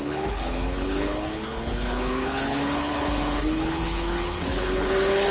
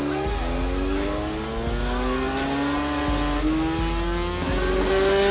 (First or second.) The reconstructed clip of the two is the first